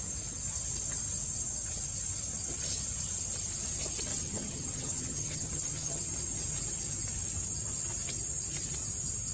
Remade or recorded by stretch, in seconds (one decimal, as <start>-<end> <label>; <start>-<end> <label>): 0.0-4.1 recorded; 4.1-6.1 remade; 6.1-9.3 recorded